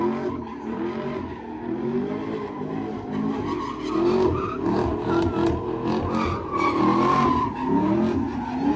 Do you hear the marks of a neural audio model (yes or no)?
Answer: no